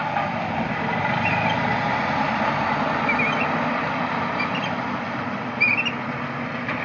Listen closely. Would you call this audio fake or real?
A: real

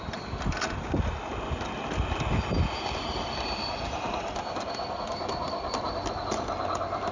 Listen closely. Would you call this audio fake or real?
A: real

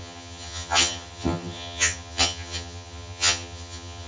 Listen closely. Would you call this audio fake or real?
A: fake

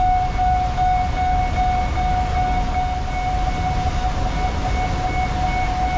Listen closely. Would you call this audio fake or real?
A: real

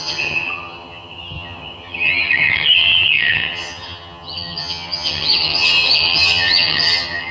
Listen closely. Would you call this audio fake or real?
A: fake